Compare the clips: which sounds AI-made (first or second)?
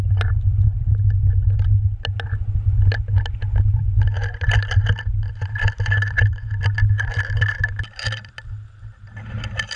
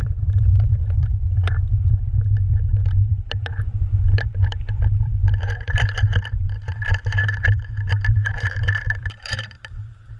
second